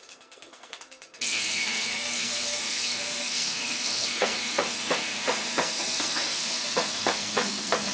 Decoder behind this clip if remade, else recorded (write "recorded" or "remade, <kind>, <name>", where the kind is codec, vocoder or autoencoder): remade, codec, SNAC